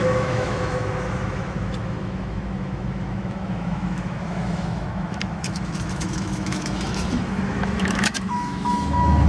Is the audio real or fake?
fake